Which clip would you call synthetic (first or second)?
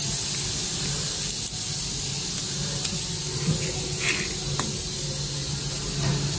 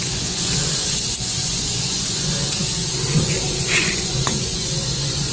second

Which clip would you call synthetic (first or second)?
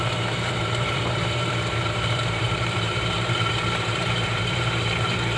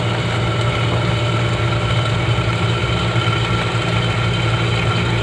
first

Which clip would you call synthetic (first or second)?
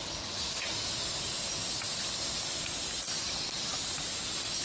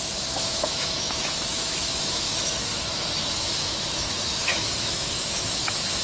second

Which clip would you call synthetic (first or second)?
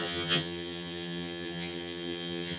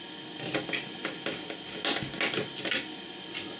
first